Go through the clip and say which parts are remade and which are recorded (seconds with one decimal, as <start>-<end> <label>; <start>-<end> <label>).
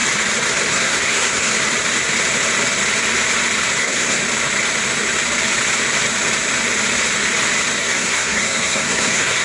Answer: 0.0-0.7 recorded; 0.7-1.5 remade; 1.5-3.8 recorded; 3.8-4.2 remade; 4.2-7.8 recorded; 7.8-9.4 remade